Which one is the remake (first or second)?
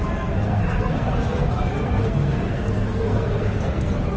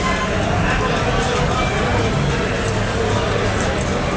first